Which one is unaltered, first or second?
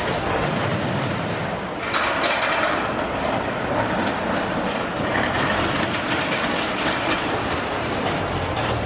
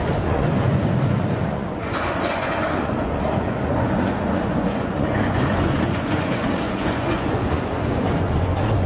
first